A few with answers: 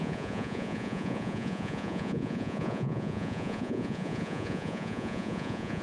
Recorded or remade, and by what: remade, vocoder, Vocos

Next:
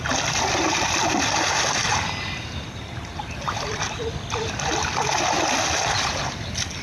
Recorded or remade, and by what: recorded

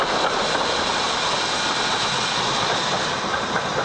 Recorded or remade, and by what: recorded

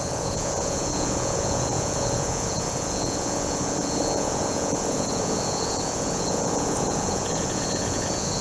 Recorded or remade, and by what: remade, vocoder, Vocos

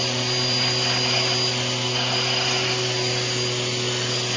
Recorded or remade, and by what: recorded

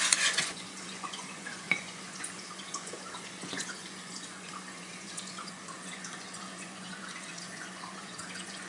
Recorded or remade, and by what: remade, vocoder, Vocos